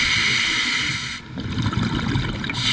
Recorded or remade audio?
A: recorded